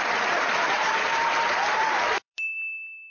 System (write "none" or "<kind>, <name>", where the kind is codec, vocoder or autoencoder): vocoder, BigVGAN v2